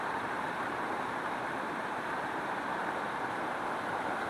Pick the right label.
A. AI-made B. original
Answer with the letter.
A